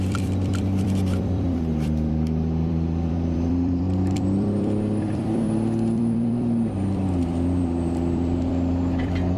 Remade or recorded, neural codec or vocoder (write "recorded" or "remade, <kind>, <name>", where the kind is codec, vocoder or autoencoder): remade, vocoder, BigVGAN v2